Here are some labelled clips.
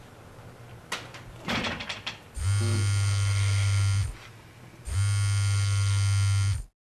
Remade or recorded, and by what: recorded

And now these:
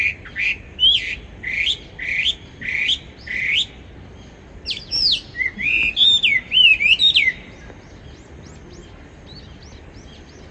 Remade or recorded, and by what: recorded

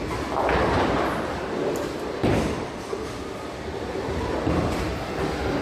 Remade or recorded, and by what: recorded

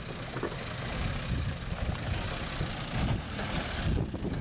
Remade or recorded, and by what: recorded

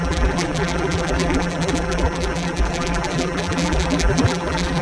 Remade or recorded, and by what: remade, vocoder, BigVGAN v2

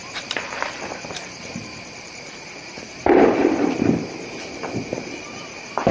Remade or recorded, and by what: remade, vocoder, BigVGAN v2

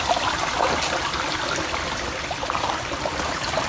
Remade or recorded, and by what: recorded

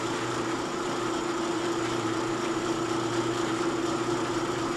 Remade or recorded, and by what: remade, vocoder, BigVGAN v2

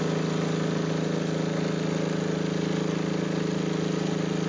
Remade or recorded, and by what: recorded